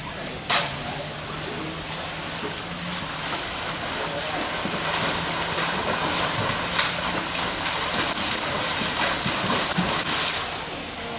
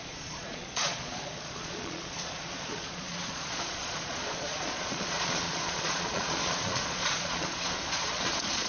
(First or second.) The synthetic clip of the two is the second